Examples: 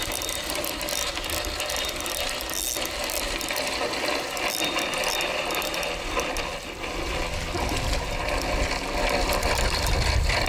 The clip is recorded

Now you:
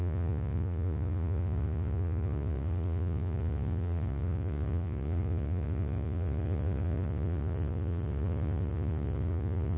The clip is remade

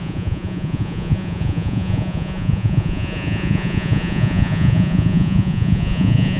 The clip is remade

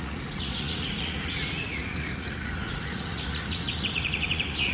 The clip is remade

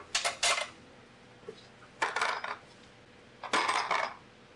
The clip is recorded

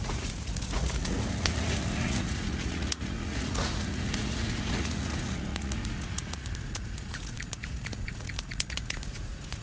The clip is remade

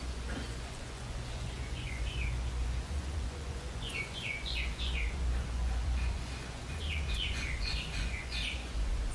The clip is remade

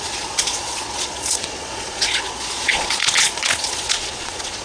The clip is remade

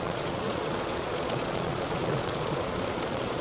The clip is remade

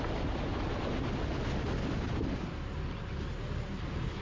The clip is recorded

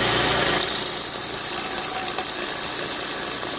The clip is recorded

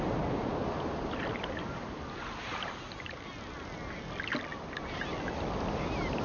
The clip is recorded